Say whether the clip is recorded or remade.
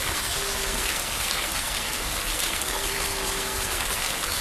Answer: remade